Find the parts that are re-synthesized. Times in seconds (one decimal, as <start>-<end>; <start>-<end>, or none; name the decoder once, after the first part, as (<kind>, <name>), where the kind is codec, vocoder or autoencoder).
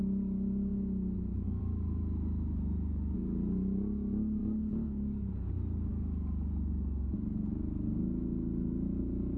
4.4-5.3 (codec, DAC)